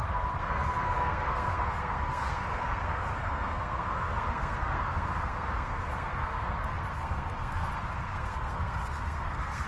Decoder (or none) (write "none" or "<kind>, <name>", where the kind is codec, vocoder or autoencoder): codec, SNAC